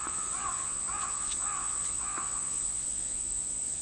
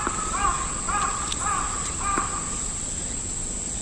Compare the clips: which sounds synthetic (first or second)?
first